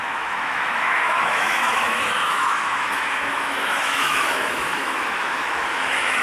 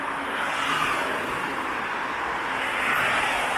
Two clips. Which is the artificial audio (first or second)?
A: first